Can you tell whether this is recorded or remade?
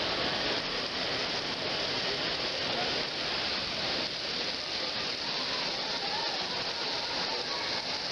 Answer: recorded